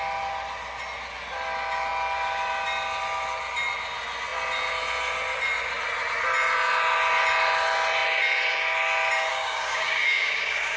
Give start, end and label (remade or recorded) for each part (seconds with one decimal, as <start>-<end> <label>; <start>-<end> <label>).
0.0-9.3 recorded; 9.3-10.8 remade

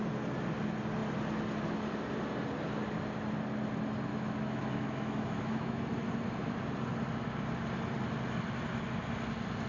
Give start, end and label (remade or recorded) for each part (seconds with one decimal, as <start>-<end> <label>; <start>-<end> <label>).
0.0-4.1 recorded; 4.1-5.9 remade; 5.9-9.7 recorded

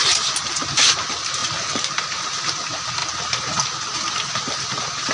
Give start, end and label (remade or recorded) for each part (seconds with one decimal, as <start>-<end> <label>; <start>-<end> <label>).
0.0-3.0 remade; 3.0-4.5 recorded; 4.5-5.1 remade

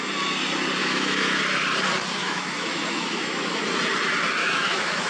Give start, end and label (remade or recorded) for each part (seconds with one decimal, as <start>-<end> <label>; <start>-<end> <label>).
0.0-0.8 recorded; 0.8-1.4 remade; 1.4-2.2 recorded; 2.2-3.6 remade; 3.6-4.4 recorded; 4.4-5.1 remade

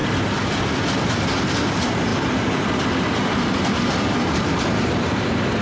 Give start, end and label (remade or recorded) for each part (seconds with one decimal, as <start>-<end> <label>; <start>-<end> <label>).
0.0-5.6 recorded

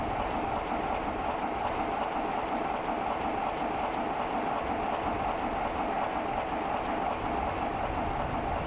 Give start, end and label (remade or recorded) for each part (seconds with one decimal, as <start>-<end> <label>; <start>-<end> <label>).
0.0-8.7 recorded

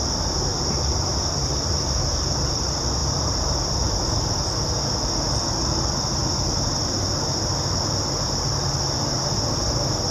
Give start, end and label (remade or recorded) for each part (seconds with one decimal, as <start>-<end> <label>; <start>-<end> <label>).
0.0-3.0 recorded; 3.0-4.4 remade; 4.4-10.1 recorded

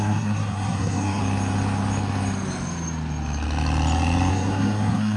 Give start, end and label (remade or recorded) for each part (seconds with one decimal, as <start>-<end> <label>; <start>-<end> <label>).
0.0-1.2 remade; 1.2-4.3 recorded; 4.3-5.2 remade